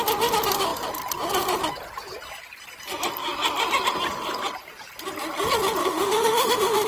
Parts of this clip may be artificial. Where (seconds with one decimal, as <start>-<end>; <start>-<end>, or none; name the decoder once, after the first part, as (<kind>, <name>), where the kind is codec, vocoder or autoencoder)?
5.8-6.9 (autoencoder, DAC-VAE)